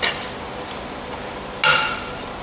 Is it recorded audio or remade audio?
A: recorded